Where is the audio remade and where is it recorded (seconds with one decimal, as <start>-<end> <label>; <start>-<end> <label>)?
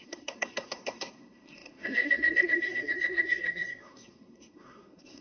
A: 0.0-5.2 remade